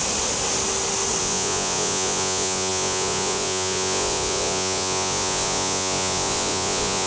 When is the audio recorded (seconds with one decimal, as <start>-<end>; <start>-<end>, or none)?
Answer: 0.0-1.2